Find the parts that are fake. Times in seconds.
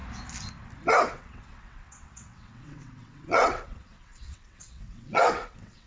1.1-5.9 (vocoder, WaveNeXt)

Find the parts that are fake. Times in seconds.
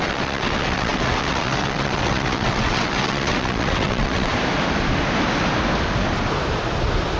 0.0-4.3 (vocoder, WaveNeXt)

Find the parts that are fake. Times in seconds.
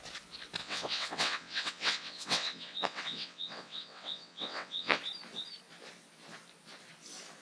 0.6-5.0 (vocoder, WaveNeXt)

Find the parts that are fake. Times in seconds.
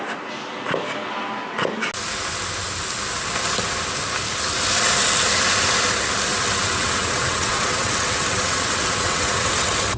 6.3-10.0 (vocoder, WaveNeXt)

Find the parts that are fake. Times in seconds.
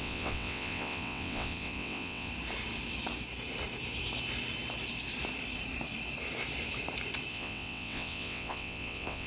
0.0-2.3 (vocoder, WaveNeXt); 7.3-9.3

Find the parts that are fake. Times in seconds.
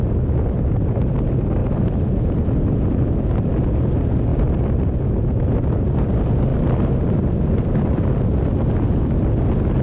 none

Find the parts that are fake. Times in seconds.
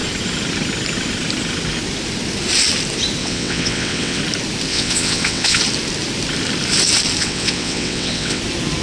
3.2-4.2 (vocoder, WaveNeXt); 4.7-5.6; 7.2-8.4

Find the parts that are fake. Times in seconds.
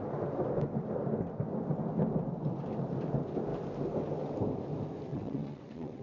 5.1-6.0 (vocoder, WaveNeXt)